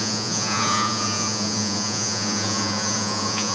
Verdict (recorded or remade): remade